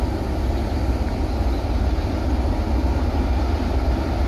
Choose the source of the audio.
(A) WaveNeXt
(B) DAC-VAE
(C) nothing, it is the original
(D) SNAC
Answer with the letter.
C